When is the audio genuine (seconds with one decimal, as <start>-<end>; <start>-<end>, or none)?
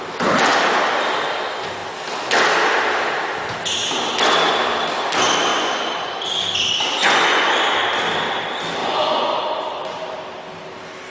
0.0-5.5; 6.2-7.0; 7.7-8.8; 9.4-11.1